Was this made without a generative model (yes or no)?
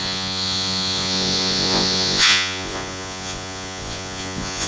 no